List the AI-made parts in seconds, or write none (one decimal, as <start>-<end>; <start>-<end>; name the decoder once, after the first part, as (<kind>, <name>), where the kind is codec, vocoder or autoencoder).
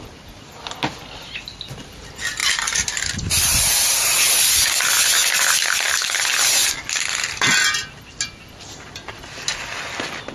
none